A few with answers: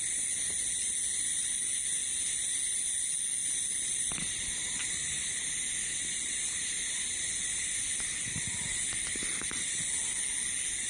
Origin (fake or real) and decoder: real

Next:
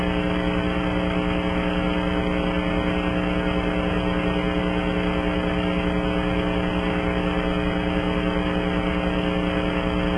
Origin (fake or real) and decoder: real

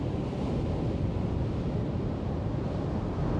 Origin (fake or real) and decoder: real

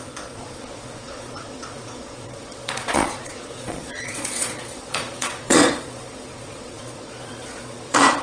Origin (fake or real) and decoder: fake, vocoder, Vocos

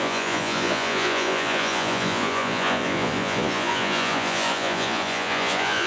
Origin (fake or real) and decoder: fake, vocoder, Vocos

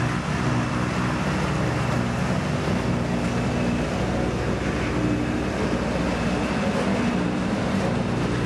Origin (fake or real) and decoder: real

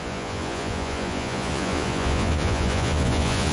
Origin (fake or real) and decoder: fake, vocoder, Vocos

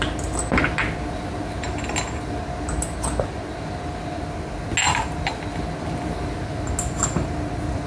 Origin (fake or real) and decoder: real